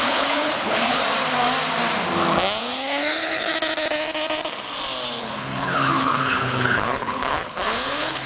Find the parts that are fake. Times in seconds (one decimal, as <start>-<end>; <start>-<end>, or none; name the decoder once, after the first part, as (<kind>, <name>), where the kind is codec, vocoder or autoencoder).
0.0-1.0 (codec, HILCodec); 2.6-3.5; 5.2-8.3